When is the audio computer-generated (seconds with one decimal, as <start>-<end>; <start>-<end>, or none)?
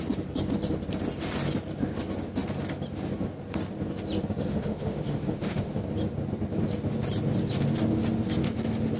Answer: 4.5-5.8